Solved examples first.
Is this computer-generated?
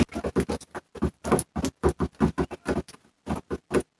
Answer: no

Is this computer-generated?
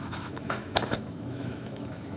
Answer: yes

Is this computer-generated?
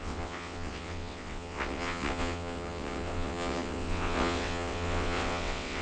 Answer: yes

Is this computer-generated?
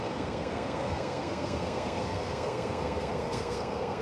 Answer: yes